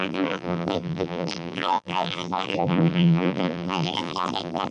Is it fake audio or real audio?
fake